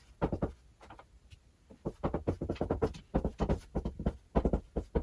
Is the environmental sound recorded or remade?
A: recorded